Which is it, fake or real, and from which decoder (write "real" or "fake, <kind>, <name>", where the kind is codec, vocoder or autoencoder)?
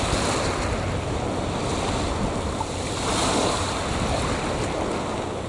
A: real